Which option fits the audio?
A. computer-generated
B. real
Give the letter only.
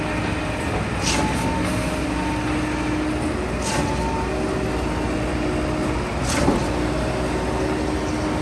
B